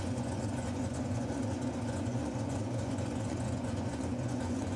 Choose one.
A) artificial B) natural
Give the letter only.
A